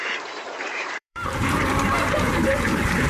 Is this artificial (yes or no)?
yes